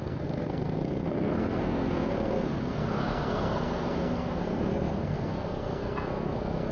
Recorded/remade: remade